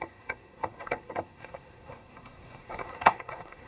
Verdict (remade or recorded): remade